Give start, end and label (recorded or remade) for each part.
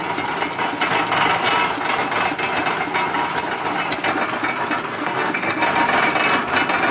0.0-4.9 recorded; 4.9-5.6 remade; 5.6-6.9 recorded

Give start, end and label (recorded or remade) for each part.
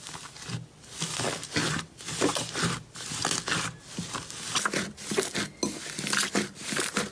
0.0-1.6 recorded; 1.6-3.7 remade; 3.7-7.1 recorded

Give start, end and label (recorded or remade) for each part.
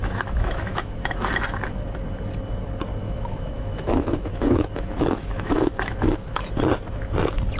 0.0-1.3 remade; 1.3-3.0 recorded; 3.0-6.5 remade; 6.5-7.6 recorded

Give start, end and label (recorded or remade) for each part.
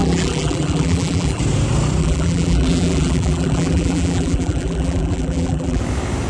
0.0-1.4 remade; 1.4-2.0 recorded; 2.0-5.8 remade; 5.8-6.3 recorded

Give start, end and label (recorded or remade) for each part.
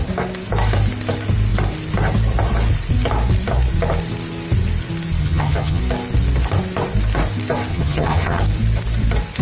0.0-5.2 recorded; 5.2-5.8 remade; 5.8-7.7 recorded; 7.7-8.4 remade; 8.4-9.4 recorded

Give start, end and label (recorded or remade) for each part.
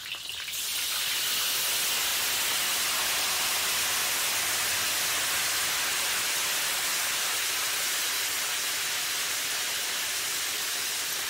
0.0-11.3 recorded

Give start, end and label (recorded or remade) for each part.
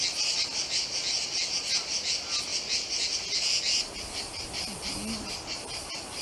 0.0-6.2 recorded